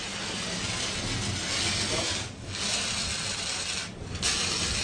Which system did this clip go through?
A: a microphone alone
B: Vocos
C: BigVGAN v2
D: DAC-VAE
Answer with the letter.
A